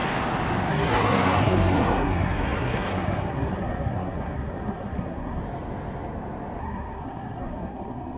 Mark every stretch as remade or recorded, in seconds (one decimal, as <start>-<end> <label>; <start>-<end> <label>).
0.0-0.7 recorded; 0.7-5.4 remade; 5.4-6.6 recorded; 6.6-8.2 remade